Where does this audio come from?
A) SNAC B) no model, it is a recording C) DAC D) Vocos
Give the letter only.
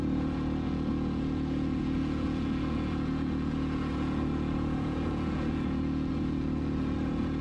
D